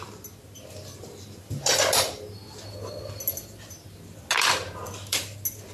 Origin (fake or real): real